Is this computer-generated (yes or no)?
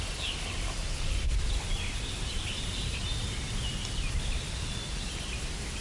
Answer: no